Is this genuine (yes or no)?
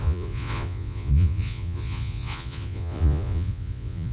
no